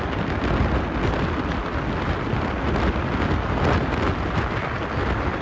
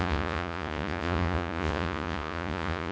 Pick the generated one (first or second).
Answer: second